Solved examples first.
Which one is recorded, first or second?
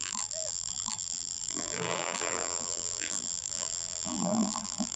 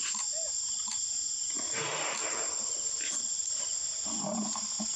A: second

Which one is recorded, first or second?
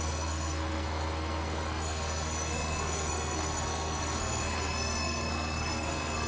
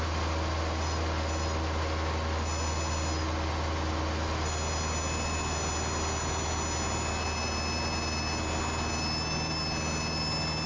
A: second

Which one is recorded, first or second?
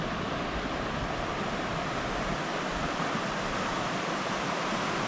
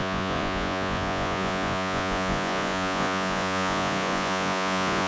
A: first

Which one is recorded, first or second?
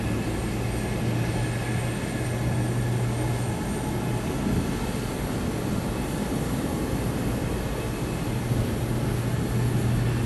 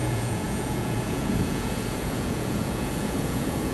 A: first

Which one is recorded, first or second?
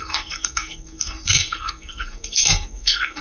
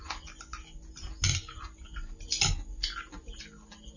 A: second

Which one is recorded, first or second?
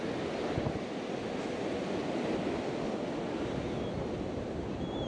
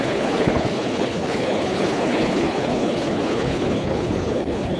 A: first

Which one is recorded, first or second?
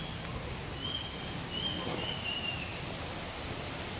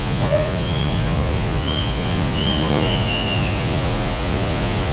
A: first